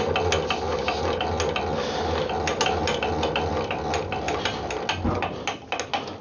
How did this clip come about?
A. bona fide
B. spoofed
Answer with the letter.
A